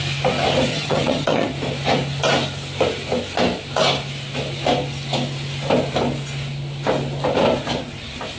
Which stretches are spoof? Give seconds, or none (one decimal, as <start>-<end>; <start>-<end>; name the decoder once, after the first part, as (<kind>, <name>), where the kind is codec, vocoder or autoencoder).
0.7-1.5 (vocoder, HiFi-GAN)

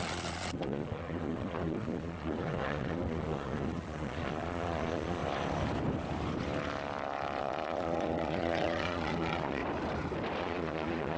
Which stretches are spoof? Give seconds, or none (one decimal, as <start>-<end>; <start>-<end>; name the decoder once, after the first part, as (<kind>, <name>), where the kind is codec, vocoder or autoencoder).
0.0-5.2 (vocoder, Vocos); 7.4-9.6; 10.4-11.2

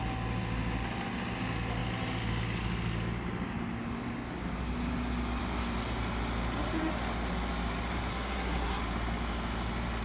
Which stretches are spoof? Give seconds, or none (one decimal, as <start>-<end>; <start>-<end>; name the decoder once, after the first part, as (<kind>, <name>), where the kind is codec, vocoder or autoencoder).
8.1-8.8 (codec, SNAC)